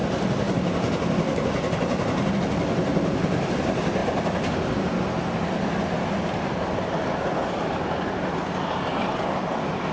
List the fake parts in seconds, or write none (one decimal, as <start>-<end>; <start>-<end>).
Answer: none